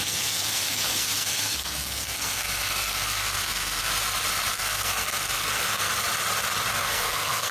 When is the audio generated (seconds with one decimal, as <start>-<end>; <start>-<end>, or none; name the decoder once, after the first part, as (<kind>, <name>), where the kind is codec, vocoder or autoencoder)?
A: 0.0-3.9 (codec, SNAC); 4.5-5.9; 6.7-7.5